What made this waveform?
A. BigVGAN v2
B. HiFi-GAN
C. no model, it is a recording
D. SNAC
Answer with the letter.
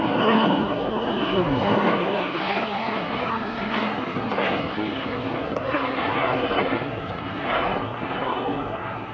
D